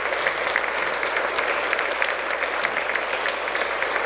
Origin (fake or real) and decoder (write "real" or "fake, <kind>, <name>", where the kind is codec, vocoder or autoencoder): real